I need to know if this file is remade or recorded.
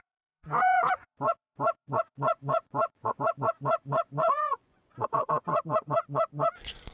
remade